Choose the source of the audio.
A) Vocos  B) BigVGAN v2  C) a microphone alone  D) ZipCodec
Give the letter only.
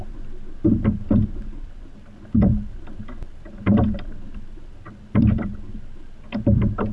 B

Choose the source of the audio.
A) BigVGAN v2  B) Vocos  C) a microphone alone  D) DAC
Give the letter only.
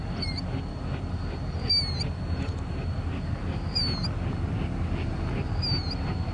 C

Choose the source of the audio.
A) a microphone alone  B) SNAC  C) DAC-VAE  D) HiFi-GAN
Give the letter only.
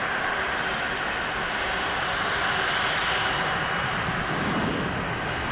A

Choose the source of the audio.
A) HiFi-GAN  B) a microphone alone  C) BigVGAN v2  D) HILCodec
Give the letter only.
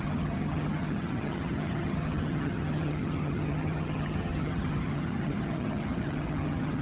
A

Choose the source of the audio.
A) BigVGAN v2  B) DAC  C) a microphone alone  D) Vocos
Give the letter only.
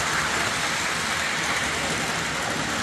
C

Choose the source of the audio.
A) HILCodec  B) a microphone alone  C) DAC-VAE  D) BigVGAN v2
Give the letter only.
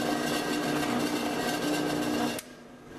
B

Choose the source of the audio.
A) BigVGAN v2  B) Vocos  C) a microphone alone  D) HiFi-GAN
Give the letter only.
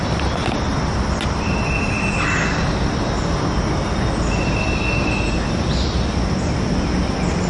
C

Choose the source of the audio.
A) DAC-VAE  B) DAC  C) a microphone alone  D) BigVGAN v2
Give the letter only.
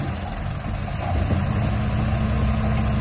C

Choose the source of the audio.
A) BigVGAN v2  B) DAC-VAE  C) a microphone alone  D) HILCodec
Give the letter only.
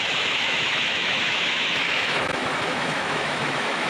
B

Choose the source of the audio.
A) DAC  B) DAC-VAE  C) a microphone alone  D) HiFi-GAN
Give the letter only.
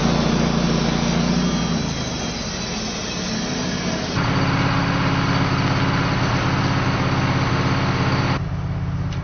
C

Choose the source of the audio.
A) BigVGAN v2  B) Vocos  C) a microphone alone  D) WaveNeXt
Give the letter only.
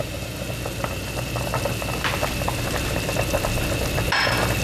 C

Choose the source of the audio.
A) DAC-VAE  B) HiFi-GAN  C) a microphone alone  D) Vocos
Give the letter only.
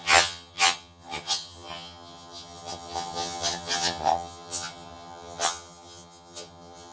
B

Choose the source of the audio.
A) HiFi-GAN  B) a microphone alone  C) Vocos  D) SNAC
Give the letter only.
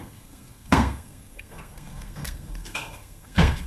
D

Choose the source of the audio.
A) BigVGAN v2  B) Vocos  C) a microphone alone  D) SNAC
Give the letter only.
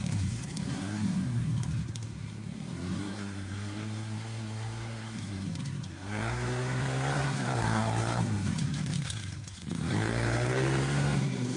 D